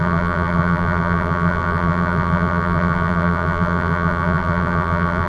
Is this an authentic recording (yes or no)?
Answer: no